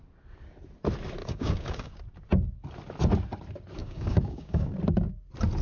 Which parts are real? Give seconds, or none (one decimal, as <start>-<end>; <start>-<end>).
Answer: 0.0-1.2; 1.9-3.8; 4.7-5.6